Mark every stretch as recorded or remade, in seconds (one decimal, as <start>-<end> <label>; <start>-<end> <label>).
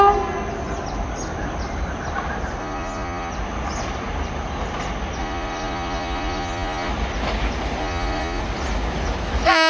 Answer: 0.0-2.6 recorded; 2.6-3.3 remade; 3.3-5.2 recorded; 5.2-6.9 remade; 6.9-7.8 recorded; 7.8-8.4 remade; 8.4-9.7 recorded